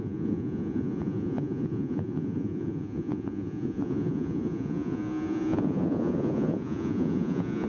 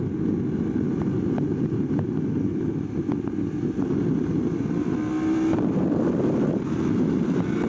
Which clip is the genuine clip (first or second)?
second